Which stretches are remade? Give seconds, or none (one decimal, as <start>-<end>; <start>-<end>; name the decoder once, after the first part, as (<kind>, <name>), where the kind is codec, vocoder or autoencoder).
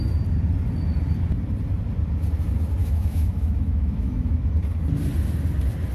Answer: 2.8-4.5 (autoencoder, DAC-VAE)